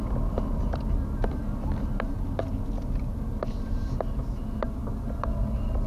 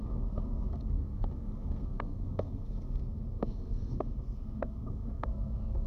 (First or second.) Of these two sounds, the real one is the first